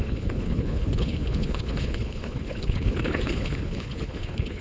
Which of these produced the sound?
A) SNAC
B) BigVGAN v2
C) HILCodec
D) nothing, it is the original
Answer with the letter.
C